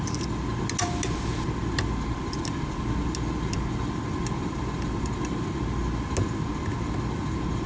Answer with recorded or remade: recorded